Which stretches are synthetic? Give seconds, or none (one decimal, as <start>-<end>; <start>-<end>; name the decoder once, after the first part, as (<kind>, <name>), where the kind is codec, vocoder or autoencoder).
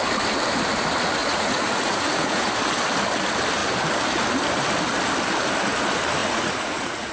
1.2-2.5 (vocoder, Vocos); 6.2-7.1